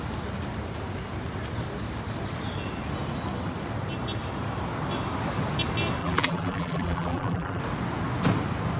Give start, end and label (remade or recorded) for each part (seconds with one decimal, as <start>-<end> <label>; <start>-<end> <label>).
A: 0.0-6.0 recorded; 6.0-7.6 remade; 7.6-8.8 recorded